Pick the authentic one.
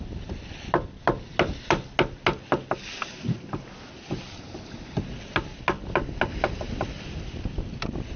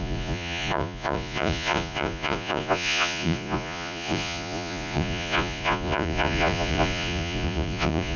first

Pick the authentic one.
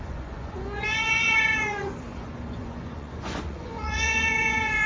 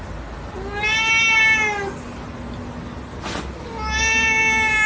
second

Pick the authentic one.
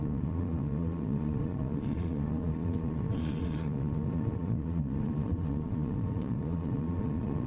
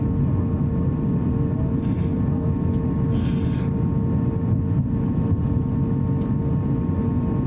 second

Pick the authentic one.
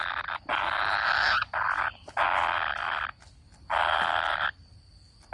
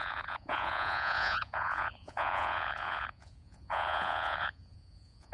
first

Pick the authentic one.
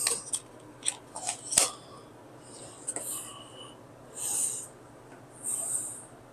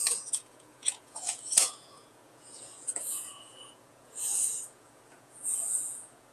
first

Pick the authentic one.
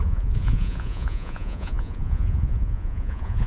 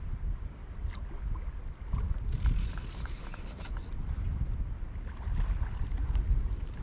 second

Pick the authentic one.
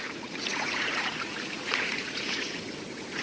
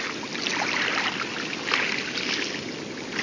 second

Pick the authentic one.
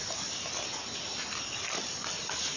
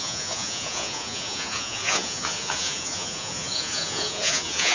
first